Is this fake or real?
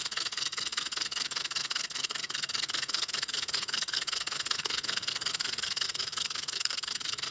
fake